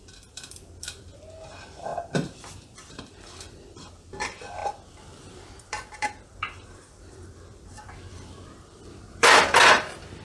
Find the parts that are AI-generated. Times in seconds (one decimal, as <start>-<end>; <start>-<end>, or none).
0.0-10.2